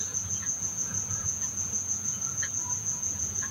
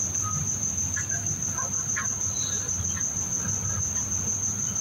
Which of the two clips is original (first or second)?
second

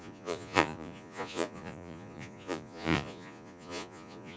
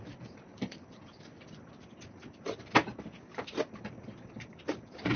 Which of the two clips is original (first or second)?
second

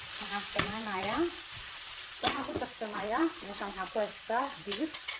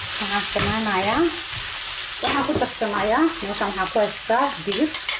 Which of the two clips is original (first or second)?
second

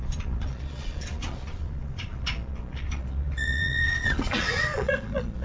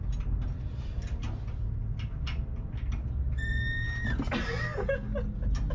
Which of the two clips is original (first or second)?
second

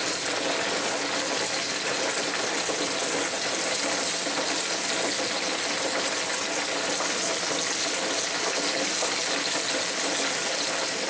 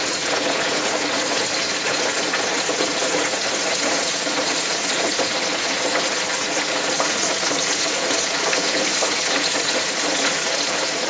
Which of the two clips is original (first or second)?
first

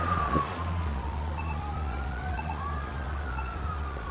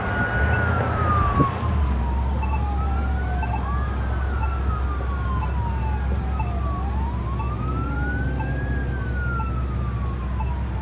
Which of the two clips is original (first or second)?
second